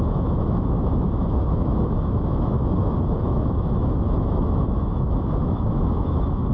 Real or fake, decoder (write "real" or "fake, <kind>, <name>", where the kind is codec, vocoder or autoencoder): fake, autoencoder, DAC-VAE